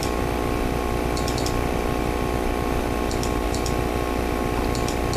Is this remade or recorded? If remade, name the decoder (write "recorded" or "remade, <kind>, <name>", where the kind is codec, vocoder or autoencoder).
recorded